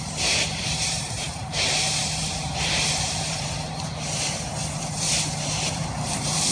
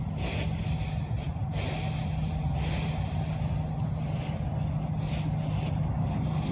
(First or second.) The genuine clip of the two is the second